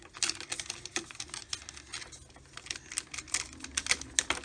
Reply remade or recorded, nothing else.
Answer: recorded